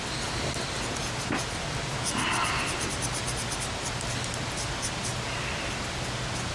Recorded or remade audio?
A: recorded